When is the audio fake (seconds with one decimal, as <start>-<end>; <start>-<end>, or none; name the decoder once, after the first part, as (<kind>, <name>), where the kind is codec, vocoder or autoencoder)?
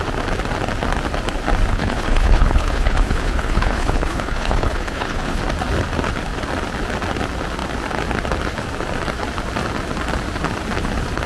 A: 1.7-5.4 (codec, HILCodec)